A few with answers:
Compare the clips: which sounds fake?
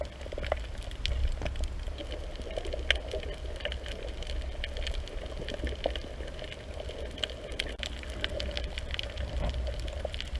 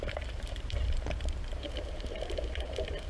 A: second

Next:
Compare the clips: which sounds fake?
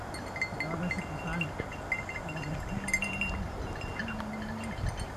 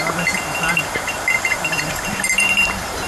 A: second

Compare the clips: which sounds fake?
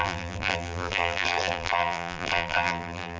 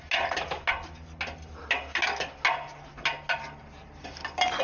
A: first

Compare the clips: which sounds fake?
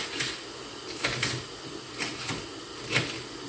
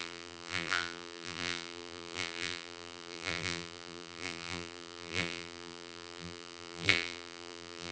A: second